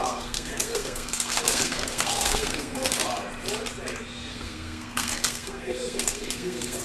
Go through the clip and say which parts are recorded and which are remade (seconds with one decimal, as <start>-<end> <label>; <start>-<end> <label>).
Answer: 0.0-3.0 remade; 3.0-4.3 recorded; 4.3-6.8 remade